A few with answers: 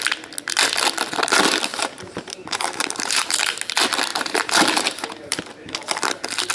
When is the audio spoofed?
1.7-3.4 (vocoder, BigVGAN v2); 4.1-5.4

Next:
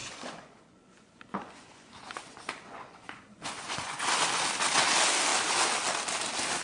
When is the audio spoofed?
0.0-4.0 (vocoder, Vocos)

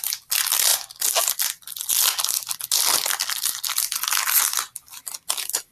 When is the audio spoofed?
none

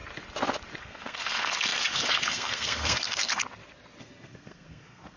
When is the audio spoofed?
0.8-3.4 (codec, SNAC); 4.0-5.2